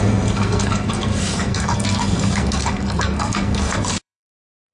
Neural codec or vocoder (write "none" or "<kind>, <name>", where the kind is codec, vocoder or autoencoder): codec, SNAC